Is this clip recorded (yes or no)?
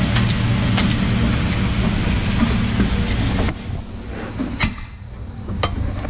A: yes